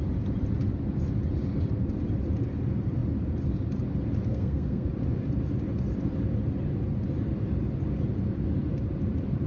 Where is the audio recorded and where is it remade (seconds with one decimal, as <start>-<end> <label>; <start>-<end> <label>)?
0.0-4.3 recorded; 4.3-4.9 remade; 4.9-9.5 recorded